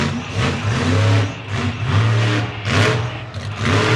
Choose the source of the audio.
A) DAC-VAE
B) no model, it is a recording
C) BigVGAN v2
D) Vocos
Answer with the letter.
B